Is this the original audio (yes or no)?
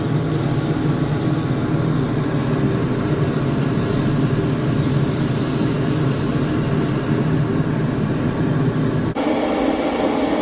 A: yes